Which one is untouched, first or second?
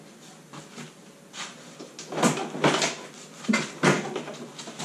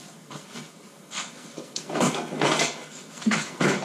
first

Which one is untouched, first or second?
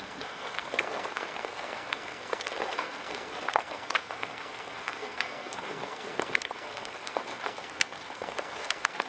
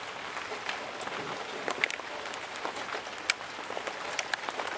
second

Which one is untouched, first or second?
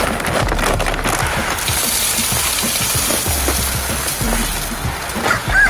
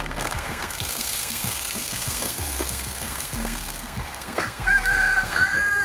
first